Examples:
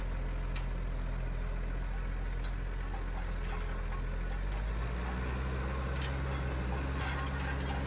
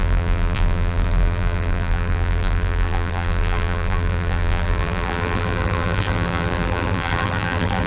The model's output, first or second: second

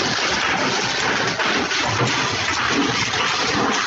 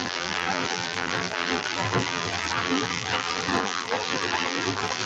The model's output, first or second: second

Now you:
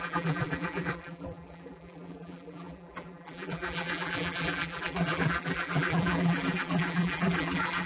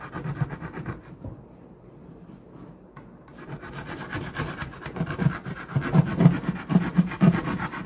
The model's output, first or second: first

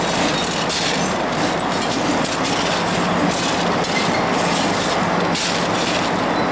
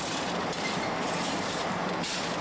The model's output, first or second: second